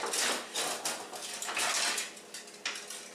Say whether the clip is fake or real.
real